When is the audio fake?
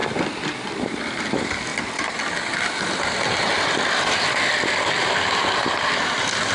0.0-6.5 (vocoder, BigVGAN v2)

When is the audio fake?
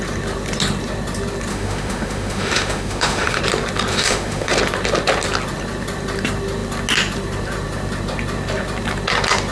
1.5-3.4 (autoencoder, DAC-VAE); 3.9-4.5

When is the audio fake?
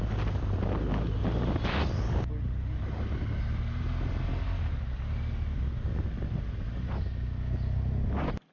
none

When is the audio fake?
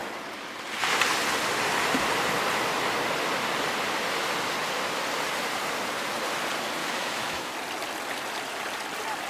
6.8-7.5 (autoencoder, DAC-VAE)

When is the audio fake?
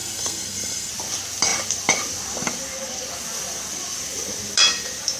0.0-0.9 (codec, SNAC)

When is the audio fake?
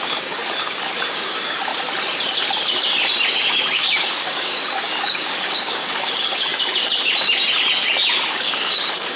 0.0-0.4 (codec, DAC); 1.1-1.7; 3.3-6.5; 8.3-9.2